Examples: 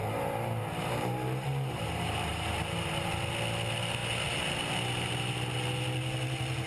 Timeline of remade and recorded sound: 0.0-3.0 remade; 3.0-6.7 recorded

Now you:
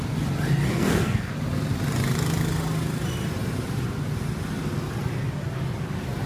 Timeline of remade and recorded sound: 0.0-0.7 recorded; 0.7-1.3 remade; 1.3-6.3 recorded

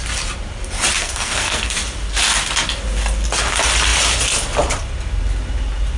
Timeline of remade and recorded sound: 0.0-1.0 recorded; 1.0-1.8 remade; 1.8-6.0 recorded

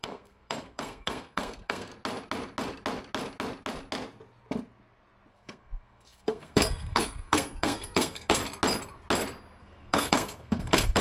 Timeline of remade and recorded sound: 0.0-1.9 remade; 1.9-5.3 recorded; 5.3-8.4 remade; 8.4-9.6 recorded; 9.6-11.0 remade

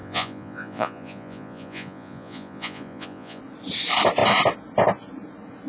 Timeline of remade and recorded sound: 0.0-3.4 remade; 3.4-5.7 recorded